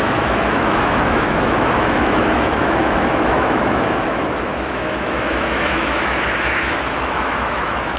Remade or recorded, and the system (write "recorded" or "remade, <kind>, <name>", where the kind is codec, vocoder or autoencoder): remade, autoencoder, DAC-VAE